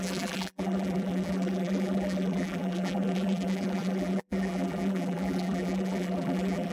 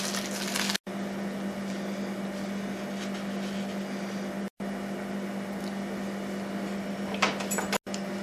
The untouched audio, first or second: second